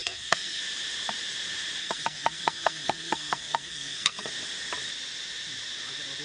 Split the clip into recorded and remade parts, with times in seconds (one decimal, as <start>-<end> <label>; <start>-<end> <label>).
0.0-0.6 remade; 0.6-1.8 recorded; 1.8-4.3 remade; 4.3-6.2 recorded